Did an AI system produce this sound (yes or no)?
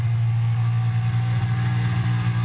no